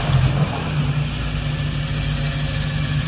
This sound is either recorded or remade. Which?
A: recorded